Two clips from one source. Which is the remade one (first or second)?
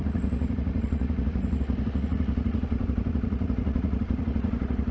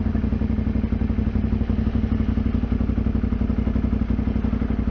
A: first